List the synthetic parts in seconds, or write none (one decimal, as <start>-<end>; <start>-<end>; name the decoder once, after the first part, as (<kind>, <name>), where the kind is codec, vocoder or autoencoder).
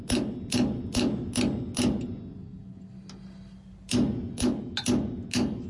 none